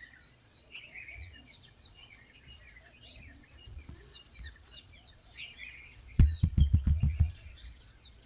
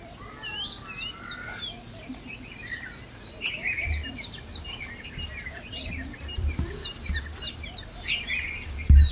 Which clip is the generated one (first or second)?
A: first